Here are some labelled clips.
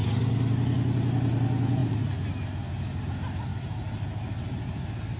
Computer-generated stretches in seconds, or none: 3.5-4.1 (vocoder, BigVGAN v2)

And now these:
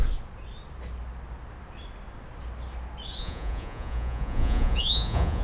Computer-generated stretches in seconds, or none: 3.2-5.4 (vocoder, Vocos)

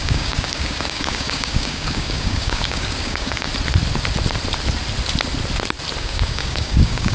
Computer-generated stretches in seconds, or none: 0.0-3.5 (codec, DAC); 6.0-7.1

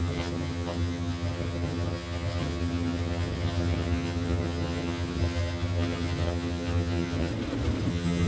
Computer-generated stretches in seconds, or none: 0.0-7.3 (vocoder, HiFi-GAN); 7.9-8.3

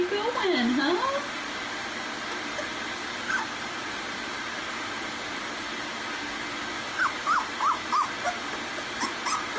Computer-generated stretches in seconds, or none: none